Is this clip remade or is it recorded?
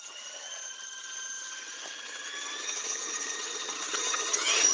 remade